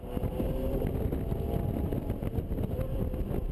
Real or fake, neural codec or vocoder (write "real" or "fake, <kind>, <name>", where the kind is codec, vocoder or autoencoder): real